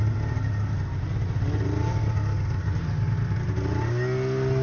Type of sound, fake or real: real